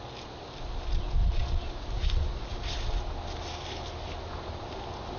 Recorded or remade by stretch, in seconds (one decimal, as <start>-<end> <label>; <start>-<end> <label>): 0.0-1.2 recorded; 1.2-1.7 remade; 1.7-5.2 recorded